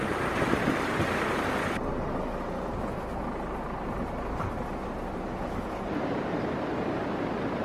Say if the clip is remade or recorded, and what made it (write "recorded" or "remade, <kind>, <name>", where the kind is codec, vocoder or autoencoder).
recorded